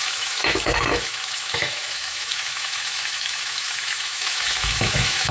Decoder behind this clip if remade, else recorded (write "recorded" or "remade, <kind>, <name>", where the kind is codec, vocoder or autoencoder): remade, autoencoder, DAC-VAE